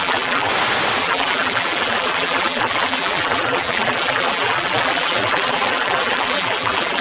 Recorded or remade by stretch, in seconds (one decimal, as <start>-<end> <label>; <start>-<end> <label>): 0.0-0.5 remade; 0.5-1.0 recorded; 1.0-7.0 remade